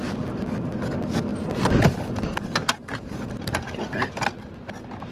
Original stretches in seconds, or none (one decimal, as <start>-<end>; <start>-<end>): 0.0-2.8; 3.8-5.1